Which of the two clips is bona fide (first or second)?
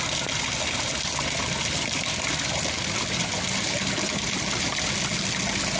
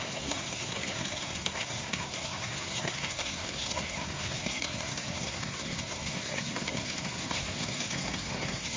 first